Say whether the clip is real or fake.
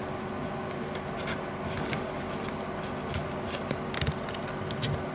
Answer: real